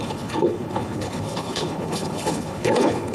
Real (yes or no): no